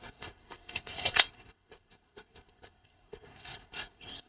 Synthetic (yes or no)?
yes